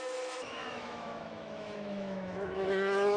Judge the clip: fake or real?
fake